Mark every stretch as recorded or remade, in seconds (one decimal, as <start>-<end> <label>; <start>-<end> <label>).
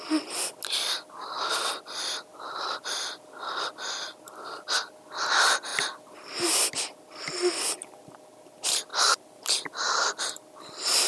0.0-2.3 recorded; 2.3-3.1 remade; 3.1-5.7 recorded; 5.7-6.8 remade; 6.8-8.9 recorded; 8.9-10.2 remade; 10.2-11.1 recorded